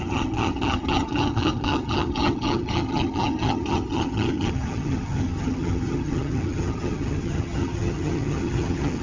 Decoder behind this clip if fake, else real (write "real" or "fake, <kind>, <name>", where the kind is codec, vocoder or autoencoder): fake, vocoder, HiFi-GAN